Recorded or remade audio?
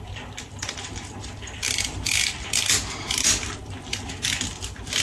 recorded